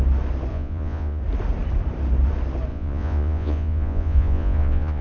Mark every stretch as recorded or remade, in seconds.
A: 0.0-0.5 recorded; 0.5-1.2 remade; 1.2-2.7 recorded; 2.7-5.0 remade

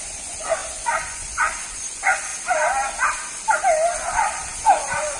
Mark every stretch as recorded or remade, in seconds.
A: 0.0-2.3 remade; 2.3-4.1 recorded; 4.1-5.2 remade

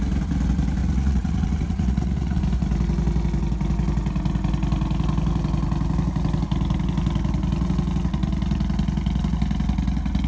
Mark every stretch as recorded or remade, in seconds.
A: 0.0-0.8 recorded; 0.8-2.4 remade; 2.4-10.3 recorded

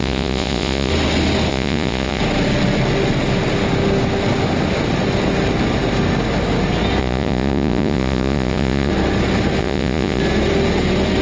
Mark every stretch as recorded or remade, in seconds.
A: 0.0-0.9 remade; 0.9-1.5 recorded; 1.5-2.2 remade; 2.2-7.0 recorded; 7.0-8.9 remade; 8.9-9.6 recorded; 9.6-10.2 remade; 10.2-11.2 recorded

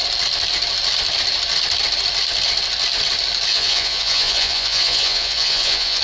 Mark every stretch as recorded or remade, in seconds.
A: 0.0-3.5 recorded; 3.5-6.0 remade

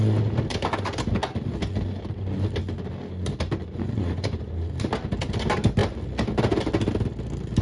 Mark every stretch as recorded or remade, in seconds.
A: 0.0-3.6 recorded; 3.6-4.5 remade; 4.5-7.6 recorded

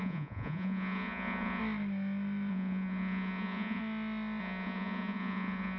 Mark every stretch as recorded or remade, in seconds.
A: 0.0-1.6 remade; 1.6-2.5 recorded; 2.5-3.8 remade; 3.8-4.4 recorded; 4.4-5.8 remade

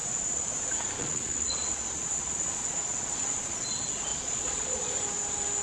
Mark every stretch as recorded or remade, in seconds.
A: 0.0-0.5 remade; 0.5-1.0 recorded; 1.0-3.6 remade; 3.6-4.1 recorded; 4.1-4.9 remade; 4.9-5.6 recorded